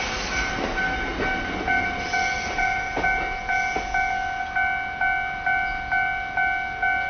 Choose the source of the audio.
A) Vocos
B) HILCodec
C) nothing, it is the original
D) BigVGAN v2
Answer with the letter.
C